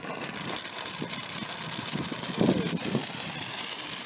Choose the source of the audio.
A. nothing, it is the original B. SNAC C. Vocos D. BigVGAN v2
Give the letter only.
A